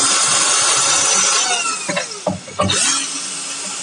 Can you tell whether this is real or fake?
real